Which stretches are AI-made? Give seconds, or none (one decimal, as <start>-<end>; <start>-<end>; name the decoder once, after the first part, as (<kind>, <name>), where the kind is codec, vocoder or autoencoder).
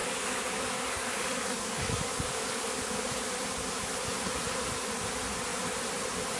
0.0-3.3 (codec, DAC)